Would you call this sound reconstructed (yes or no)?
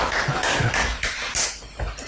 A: no